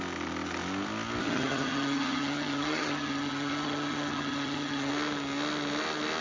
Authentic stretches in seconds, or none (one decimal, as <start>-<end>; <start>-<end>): 0.0-1.2; 4.9-6.2